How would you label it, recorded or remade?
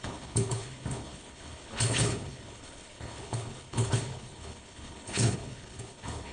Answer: remade